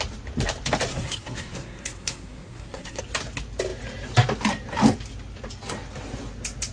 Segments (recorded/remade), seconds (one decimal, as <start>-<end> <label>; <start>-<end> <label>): 0.0-0.9 recorded; 0.9-3.0 remade; 3.0-6.7 recorded